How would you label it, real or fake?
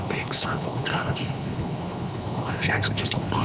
fake